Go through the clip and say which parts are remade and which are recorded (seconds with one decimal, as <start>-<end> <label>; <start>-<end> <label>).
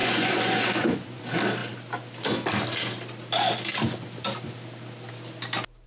0.0-1.2 remade; 1.2-5.9 recorded